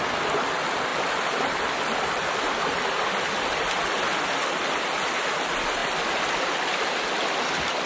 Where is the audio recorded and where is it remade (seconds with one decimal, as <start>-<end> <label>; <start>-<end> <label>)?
0.0-7.9 recorded